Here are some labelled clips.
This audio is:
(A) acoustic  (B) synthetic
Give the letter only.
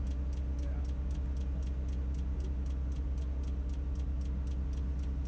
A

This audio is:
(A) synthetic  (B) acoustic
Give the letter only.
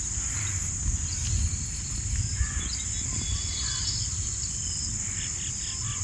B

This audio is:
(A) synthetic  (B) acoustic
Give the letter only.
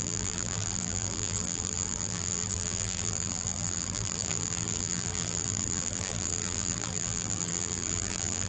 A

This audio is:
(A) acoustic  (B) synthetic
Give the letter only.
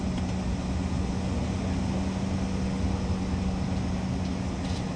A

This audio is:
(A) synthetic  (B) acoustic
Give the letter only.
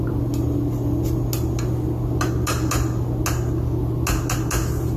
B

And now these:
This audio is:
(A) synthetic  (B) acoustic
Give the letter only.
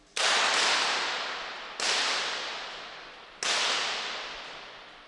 B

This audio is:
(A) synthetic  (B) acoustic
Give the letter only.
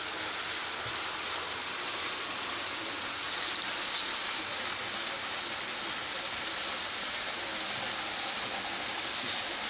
B